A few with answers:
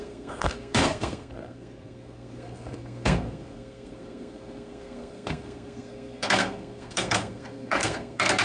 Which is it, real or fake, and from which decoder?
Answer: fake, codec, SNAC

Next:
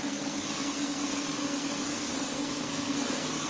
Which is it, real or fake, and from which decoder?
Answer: fake, codec, SNAC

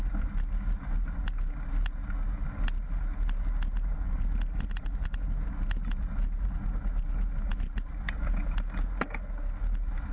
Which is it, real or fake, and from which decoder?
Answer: real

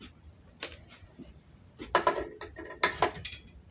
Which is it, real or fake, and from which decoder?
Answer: real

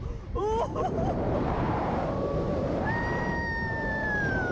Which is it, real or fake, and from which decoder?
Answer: fake, vocoder, BigVGAN v2